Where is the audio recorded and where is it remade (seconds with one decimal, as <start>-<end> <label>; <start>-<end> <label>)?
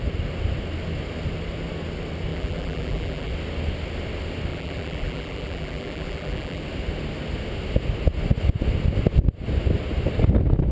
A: 0.0-2.3 recorded; 2.3-3.3 remade; 3.3-4.5 recorded; 4.5-6.6 remade; 6.6-10.7 recorded